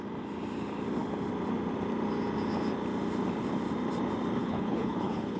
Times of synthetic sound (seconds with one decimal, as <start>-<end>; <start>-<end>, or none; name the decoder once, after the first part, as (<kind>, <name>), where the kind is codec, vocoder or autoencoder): 4.4-5.4 (codec, HILCodec)